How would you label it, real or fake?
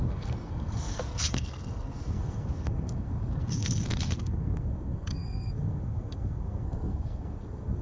fake